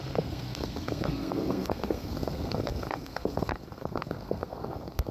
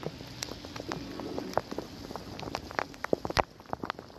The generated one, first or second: first